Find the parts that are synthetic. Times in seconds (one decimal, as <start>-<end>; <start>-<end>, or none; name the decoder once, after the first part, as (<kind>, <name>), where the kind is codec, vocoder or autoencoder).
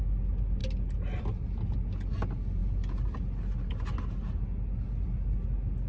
none